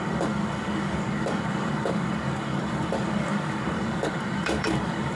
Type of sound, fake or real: fake